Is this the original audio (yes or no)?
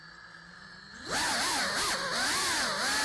yes